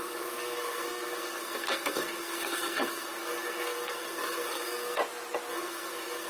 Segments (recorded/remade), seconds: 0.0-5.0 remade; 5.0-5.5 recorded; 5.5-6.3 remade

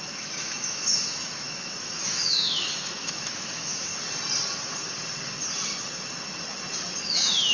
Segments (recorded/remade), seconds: 0.0-3.9 remade; 3.9-7.0 recorded; 7.0-7.5 remade